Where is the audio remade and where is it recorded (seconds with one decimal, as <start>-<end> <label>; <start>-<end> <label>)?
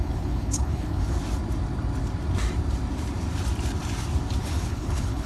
0.0-1.2 remade; 1.2-4.4 recorded; 4.4-5.3 remade